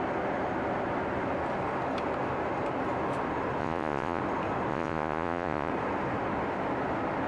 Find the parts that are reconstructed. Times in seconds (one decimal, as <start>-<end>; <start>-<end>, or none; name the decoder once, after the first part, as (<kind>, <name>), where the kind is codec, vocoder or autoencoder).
3.6-4.2 (vocoder, Vocos); 4.7-5.7